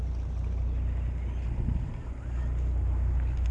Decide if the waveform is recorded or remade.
recorded